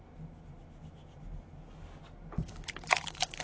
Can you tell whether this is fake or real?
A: real